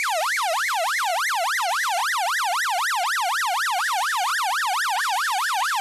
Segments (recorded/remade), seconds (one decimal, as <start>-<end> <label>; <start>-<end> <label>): 0.0-1.1 remade; 1.1-1.6 recorded; 1.6-2.0 remade; 2.0-3.8 recorded; 3.8-4.3 remade; 4.3-5.0 recorded; 5.0-5.8 remade